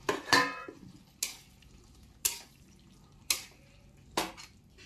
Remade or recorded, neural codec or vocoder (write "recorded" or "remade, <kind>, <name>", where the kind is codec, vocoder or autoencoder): recorded